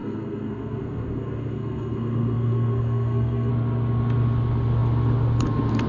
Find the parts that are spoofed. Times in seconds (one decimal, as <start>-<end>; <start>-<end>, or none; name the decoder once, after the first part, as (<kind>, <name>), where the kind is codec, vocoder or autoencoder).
0.0-3.5 (codec, SNAC)